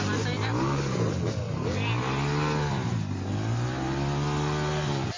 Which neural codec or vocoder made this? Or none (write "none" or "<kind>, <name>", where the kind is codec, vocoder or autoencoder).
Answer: none